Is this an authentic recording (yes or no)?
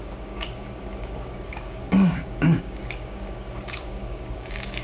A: no